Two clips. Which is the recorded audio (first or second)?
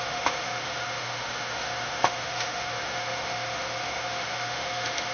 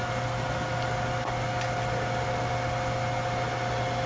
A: second